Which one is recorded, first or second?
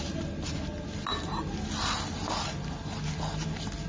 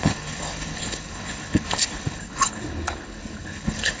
first